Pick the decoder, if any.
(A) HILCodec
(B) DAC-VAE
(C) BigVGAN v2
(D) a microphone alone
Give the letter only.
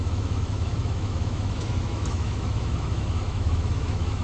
B